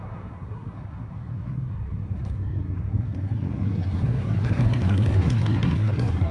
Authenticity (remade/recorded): remade